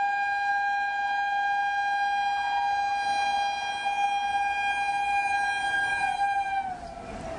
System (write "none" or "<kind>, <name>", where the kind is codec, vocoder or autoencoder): none